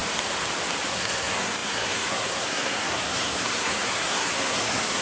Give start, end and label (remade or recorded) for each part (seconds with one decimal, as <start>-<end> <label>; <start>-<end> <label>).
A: 0.0-0.9 recorded; 0.9-5.0 remade